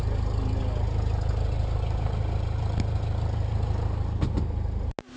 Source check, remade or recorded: recorded